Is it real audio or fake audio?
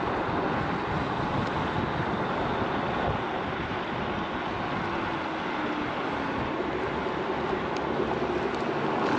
real